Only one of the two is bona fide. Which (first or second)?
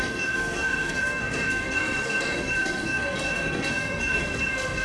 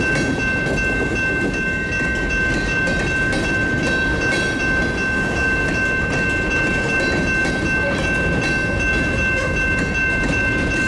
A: second